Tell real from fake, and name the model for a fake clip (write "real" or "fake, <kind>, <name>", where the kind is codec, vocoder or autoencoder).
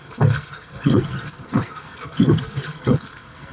fake, codec, SNAC